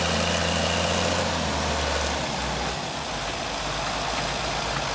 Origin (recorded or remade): recorded